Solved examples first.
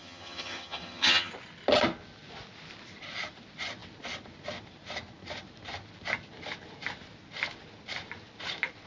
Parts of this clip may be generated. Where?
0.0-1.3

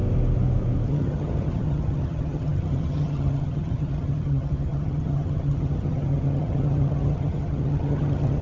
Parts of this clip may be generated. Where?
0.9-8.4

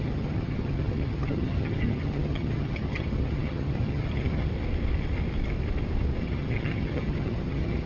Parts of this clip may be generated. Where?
0.0-4.5; 6.2-7.9